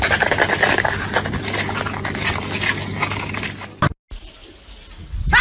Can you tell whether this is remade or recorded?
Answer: recorded